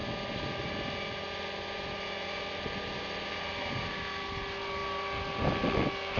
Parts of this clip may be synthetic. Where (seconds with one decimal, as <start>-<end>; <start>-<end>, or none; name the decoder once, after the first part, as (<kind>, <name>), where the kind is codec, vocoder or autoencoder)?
none